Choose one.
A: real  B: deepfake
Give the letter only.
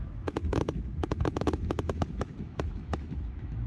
B